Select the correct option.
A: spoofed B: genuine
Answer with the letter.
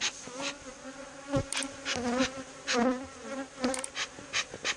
B